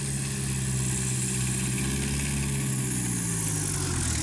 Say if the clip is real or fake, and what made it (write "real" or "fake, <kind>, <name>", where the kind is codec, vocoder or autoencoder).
real